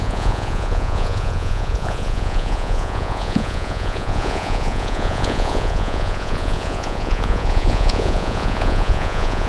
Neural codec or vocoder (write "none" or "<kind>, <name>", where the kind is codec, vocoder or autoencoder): vocoder, Vocos